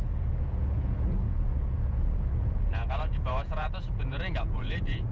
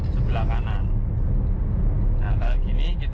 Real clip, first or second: second